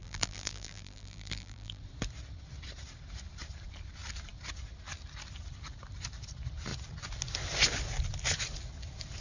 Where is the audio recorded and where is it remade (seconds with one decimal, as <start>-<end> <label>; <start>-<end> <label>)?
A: 0.0-1.8 remade; 1.8-9.2 recorded